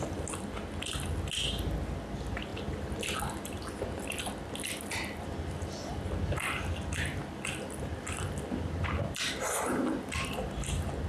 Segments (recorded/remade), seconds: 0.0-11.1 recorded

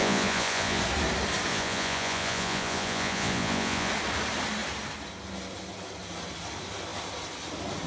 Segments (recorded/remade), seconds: 0.0-0.8 remade; 0.8-1.5 recorded; 1.5-3.9 remade; 3.9-7.9 recorded

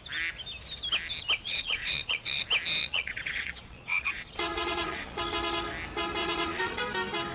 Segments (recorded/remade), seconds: 0.0-1.4 recorded; 1.4-2.4 remade; 2.4-2.8 recorded; 2.8-5.2 remade; 5.2-6.2 recorded; 6.2-6.8 remade; 6.8-7.3 recorded

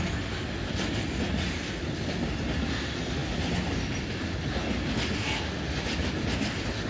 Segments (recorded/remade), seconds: 0.0-6.9 recorded

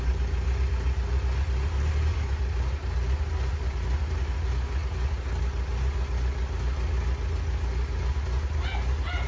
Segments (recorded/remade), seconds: 0.0-9.3 recorded